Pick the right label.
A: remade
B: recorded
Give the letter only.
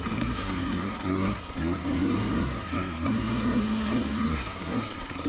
A